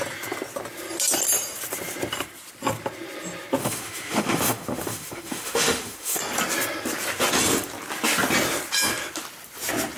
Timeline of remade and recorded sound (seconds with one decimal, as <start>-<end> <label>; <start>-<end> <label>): 0.0-3.6 recorded; 3.6-6.2 remade; 6.2-10.0 recorded